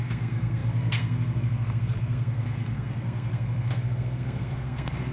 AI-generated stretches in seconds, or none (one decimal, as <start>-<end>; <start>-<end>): 0.0-5.1